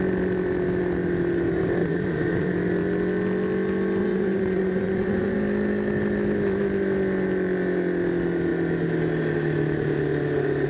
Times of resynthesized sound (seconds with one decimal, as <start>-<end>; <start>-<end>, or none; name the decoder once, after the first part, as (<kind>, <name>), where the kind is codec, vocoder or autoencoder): 1.8-2.5 (vocoder, Vocos); 4.0-5.4